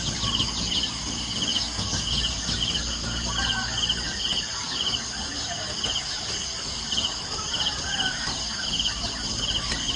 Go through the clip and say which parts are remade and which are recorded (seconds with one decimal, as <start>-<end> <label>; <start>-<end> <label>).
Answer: 0.0-10.0 recorded